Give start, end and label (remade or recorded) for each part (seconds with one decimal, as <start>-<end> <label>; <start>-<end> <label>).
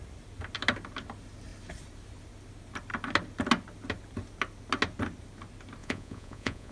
0.0-5.8 recorded; 5.8-6.7 remade